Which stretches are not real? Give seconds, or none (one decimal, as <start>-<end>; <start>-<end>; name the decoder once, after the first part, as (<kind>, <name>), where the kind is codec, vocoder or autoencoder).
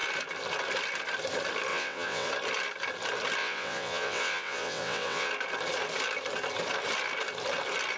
1.7-2.3 (vocoder, WaveNeXt); 3.4-5.3